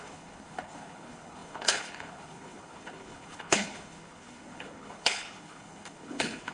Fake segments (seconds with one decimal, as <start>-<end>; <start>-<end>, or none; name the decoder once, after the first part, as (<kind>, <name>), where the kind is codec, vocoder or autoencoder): 0.0-6.5 (codec, HILCodec)